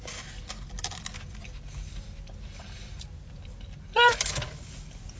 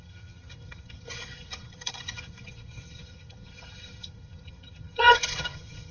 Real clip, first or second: first